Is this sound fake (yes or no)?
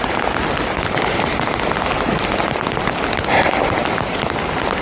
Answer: no